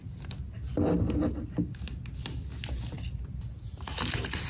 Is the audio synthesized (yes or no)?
no